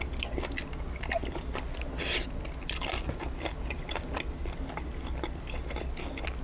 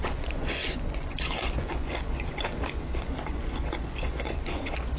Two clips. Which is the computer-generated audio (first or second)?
second